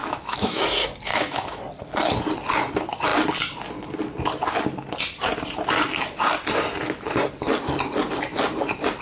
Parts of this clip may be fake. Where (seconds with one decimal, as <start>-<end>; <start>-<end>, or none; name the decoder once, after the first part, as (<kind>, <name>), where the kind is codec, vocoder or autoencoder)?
0.0-0.6 (autoencoder, DAC-VAE); 1.1-1.6